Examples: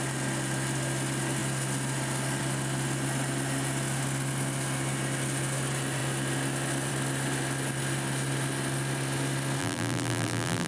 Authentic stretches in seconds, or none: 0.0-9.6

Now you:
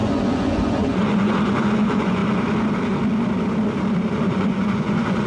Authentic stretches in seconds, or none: 2.2-4.1

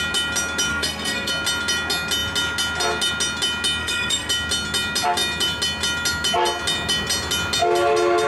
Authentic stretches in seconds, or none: 0.0-0.7; 1.3-3.8; 4.3-8.3

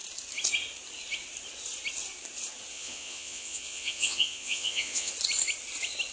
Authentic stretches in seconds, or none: 0.0-2.7; 5.1-6.1

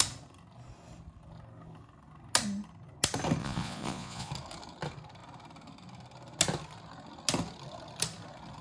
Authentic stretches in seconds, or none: 0.0-3.4; 4.3-8.6